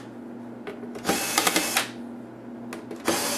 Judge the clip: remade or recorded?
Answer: recorded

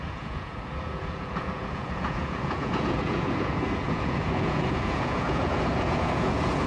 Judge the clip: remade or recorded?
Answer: remade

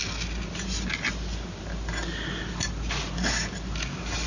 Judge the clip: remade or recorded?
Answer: recorded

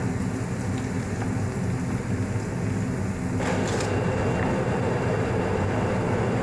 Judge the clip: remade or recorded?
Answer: recorded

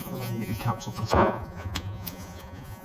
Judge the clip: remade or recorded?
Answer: remade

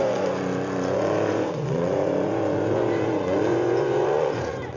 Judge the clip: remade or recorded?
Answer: remade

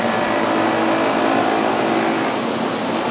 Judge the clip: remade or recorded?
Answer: recorded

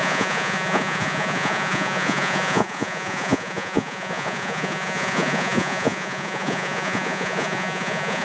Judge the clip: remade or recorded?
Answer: remade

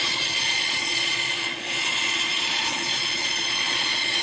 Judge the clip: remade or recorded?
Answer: remade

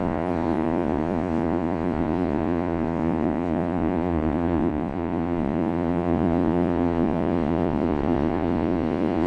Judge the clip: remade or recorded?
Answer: remade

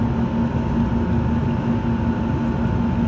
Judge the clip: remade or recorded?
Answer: recorded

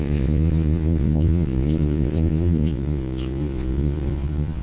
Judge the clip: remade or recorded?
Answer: remade